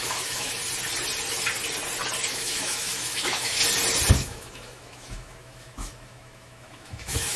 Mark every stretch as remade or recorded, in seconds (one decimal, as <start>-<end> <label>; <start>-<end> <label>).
0.0-0.6 remade; 0.6-2.3 recorded; 2.3-3.6 remade; 3.6-4.1 recorded; 4.1-7.4 remade